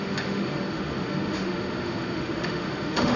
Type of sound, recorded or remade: remade